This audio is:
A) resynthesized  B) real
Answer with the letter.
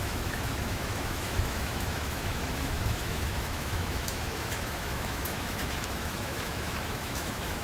A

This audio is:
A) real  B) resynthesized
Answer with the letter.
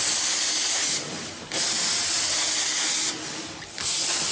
A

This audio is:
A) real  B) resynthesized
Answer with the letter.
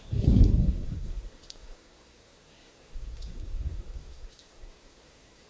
B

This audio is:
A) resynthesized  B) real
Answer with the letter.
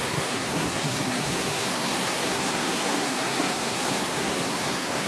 A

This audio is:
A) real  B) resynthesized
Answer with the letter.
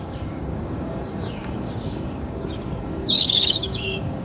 B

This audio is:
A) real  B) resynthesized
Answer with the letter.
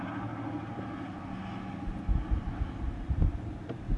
A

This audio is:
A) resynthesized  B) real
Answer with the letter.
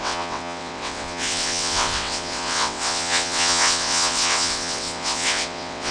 A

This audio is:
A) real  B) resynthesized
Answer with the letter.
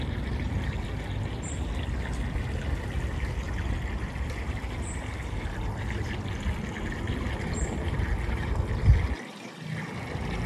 A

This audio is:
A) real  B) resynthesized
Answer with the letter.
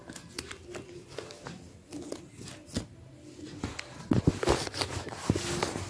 A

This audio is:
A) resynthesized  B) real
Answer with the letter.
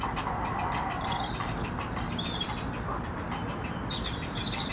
B